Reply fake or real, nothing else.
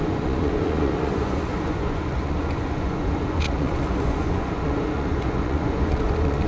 fake